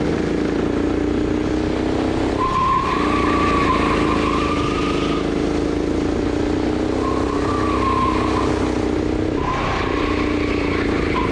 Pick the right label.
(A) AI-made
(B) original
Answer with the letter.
B